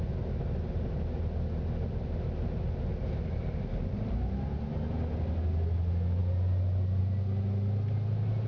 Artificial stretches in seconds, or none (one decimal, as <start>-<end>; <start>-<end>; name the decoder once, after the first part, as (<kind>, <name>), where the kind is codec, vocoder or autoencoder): none